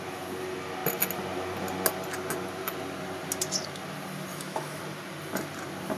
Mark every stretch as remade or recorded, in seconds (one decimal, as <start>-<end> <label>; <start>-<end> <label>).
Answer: 0.0-4.3 recorded; 4.3-4.8 remade; 4.8-6.0 recorded